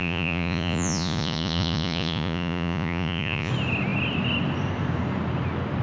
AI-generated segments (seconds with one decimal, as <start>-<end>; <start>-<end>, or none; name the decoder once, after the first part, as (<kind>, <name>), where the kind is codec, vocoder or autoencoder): 0.0-3.5 (vocoder, Vocos)